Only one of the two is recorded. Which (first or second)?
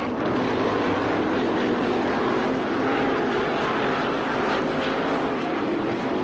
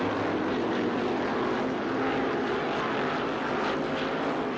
second